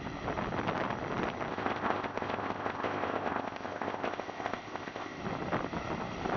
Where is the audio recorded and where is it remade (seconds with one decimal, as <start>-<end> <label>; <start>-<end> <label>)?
0.0-1.5 recorded; 1.5-5.2 remade; 5.2-6.4 recorded